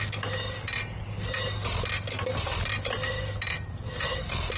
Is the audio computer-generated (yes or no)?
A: no